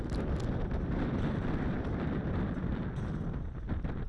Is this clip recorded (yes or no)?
yes